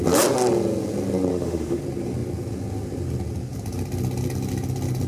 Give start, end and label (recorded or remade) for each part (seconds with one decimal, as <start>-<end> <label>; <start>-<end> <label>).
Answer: 0.0-1.3 recorded; 1.3-1.8 remade; 1.8-5.1 recorded